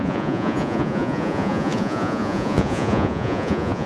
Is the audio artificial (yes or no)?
yes